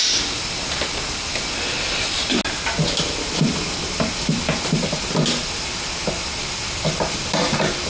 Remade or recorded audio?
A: recorded